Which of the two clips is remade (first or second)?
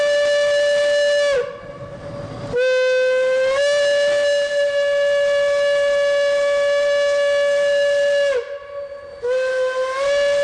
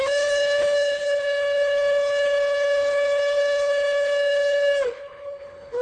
second